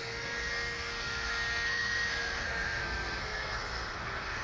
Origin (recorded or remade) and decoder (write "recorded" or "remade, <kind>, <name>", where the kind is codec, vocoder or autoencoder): remade, codec, SNAC